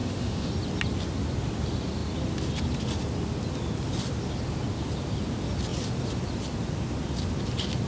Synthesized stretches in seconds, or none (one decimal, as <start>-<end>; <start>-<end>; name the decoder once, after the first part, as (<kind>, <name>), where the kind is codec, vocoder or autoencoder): 0.0-0.5 (autoencoder, DAC-VAE)